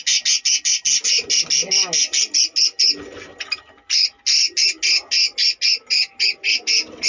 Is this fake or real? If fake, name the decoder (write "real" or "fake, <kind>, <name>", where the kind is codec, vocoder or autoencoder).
real